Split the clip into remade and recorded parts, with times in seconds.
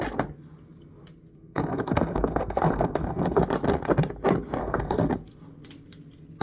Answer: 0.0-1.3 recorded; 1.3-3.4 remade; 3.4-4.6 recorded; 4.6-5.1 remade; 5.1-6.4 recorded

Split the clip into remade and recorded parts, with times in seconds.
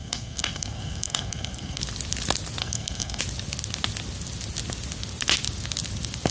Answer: 0.0-1.8 remade; 1.8-2.6 recorded; 2.6-3.2 remade; 3.2-6.3 recorded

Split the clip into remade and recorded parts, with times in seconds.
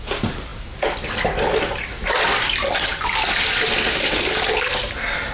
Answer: 0.0-5.3 recorded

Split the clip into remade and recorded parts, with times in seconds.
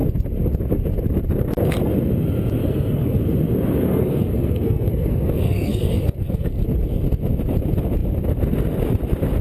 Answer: 0.0-2.6 recorded; 2.6-3.2 remade; 3.2-3.7 recorded; 3.7-6.5 remade; 6.5-9.4 recorded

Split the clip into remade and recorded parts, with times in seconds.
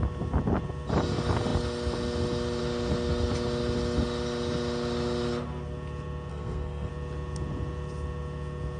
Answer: 0.0-6.3 recorded; 6.3-6.9 remade; 6.9-8.8 recorded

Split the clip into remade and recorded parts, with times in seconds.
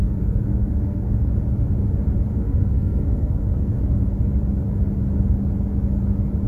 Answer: 0.0-1.3 remade; 1.3-2.3 recorded; 2.3-3.8 remade; 3.8-6.5 recorded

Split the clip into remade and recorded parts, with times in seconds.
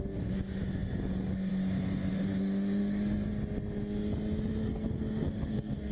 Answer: 0.0-2.8 recorded; 2.8-3.3 remade; 3.3-4.6 recorded; 4.6-5.9 remade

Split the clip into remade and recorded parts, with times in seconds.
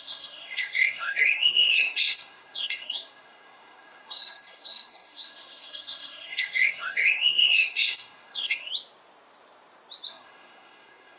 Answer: 0.0-8.7 remade; 8.7-10.1 recorded; 10.1-11.2 remade